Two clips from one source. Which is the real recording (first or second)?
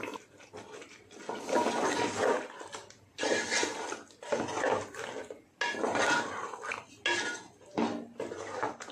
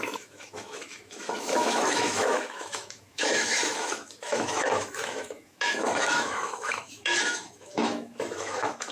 first